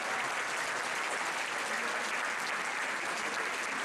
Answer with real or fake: real